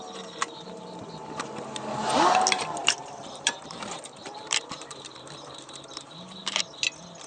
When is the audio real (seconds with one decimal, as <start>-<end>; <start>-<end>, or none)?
0.0-2.8; 3.8-4.2; 6.8-7.3